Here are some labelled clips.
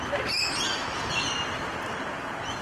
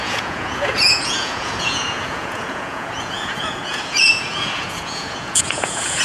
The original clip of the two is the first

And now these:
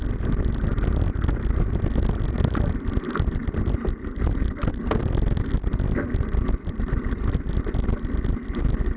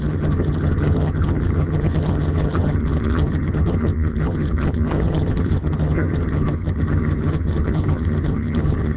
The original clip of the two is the first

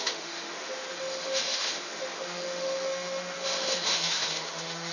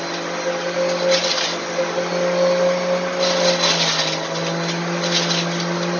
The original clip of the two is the second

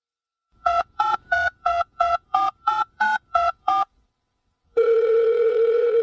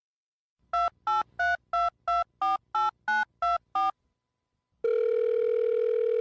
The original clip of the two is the second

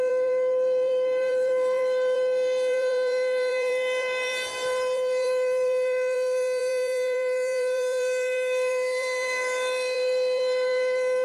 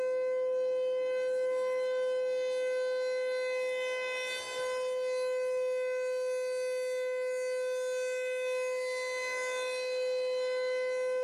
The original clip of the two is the second